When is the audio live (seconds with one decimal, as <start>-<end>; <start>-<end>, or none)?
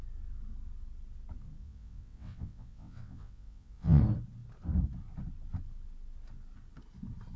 0.0-1.6; 4.0-7.4